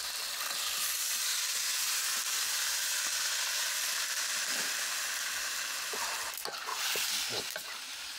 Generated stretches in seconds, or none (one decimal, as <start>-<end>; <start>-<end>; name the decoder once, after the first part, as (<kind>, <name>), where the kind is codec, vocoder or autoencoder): 6.7-7.4 (vocoder, BigVGAN v2)